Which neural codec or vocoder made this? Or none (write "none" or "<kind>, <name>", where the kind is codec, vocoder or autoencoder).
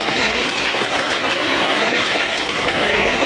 codec, SNAC